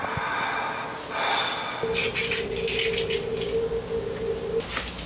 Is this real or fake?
real